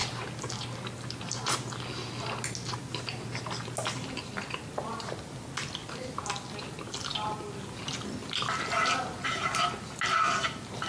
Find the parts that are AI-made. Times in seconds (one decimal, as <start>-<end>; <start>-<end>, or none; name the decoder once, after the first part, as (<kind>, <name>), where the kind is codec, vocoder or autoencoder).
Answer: none

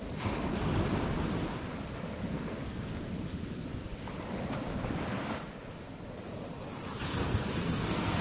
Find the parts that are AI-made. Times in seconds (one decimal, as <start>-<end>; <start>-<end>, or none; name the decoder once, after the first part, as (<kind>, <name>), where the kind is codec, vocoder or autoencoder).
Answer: 2.3-3.2 (codec, SNAC); 7.2-8.2

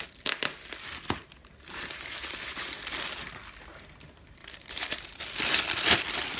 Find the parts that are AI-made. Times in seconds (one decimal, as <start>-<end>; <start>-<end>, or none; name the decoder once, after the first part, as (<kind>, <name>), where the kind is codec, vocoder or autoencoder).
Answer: 1.2-2.6 (vocoder, BigVGAN v2); 4.4-5.2

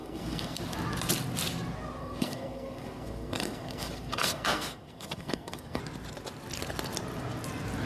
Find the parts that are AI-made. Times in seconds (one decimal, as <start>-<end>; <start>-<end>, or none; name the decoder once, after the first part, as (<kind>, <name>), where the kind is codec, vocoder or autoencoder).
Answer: 0.0-0.6 (codec, SNAC); 2.0-5.8

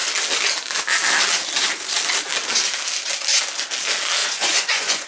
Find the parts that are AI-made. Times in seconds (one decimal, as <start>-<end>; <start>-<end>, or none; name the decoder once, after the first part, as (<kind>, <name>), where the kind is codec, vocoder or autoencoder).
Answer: 4.2-5.1 (vocoder, Vocos)

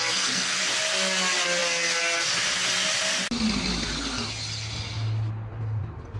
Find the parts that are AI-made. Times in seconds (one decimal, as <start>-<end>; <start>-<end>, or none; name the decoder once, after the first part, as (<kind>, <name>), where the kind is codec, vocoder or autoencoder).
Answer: 0.0-0.6 (codec, SNAC)

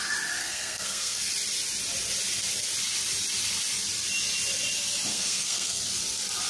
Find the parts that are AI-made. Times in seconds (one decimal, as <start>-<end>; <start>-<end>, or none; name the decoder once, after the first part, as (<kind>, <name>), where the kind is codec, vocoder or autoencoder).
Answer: 0.4-1.3 (codec, SNAC); 5.1-5.8

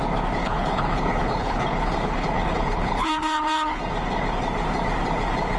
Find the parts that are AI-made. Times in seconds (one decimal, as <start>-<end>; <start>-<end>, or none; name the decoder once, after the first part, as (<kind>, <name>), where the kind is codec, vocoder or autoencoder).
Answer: 0.4-3.8 (codec, HILCodec)